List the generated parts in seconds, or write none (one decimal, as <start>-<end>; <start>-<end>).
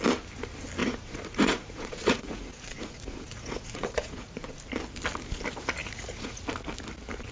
0.8-4.6; 5.8-6.4